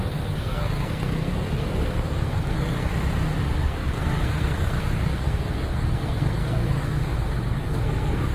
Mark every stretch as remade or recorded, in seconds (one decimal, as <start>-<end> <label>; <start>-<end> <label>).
0.0-2.9 remade; 2.9-3.6 recorded; 3.6-8.3 remade